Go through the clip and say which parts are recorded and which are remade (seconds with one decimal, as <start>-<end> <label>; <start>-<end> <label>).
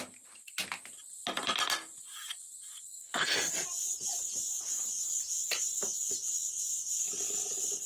0.0-2.7 recorded; 2.7-3.5 remade; 3.5-7.9 recorded